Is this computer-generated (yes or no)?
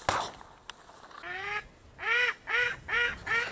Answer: no